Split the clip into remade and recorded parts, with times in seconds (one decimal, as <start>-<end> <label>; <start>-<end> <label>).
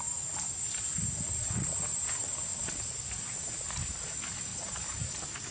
0.0-2.5 recorded; 2.5-3.5 remade; 3.5-4.5 recorded; 4.5-5.1 remade; 5.1-5.5 recorded